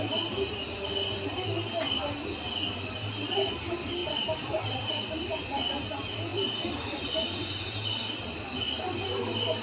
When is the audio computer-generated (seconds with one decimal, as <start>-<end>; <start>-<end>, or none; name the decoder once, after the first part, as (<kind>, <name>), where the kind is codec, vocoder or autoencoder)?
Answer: 1.3-2.5 (vocoder, BigVGAN v2); 4.0-5.4; 6.3-7.2